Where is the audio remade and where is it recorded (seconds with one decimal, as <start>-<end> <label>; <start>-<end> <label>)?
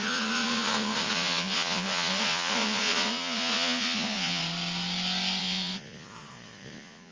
0.0-4.4 remade; 4.4-5.4 recorded; 5.4-7.1 remade